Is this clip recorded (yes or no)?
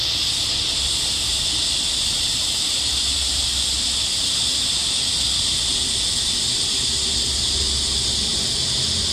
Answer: yes